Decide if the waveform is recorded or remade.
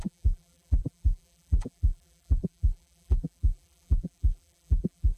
remade